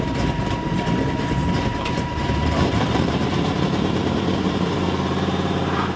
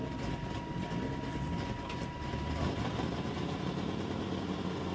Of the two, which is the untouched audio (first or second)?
second